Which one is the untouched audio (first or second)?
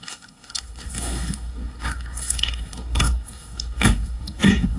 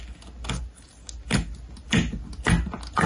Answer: second